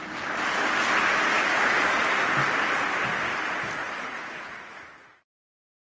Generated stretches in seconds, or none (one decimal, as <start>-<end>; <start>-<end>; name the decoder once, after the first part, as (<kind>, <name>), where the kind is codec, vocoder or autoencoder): 1.0-2.0 (vocoder, Vocos); 3.8-5.8